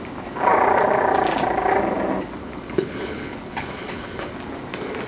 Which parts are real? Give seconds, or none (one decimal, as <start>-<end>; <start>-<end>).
0.0-2.4; 4.3-5.1